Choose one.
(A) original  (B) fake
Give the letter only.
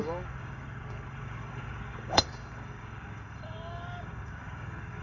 B